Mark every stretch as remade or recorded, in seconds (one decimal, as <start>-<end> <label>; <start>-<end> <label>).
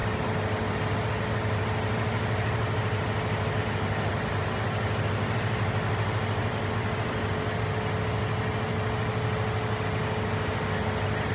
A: 0.0-11.3 recorded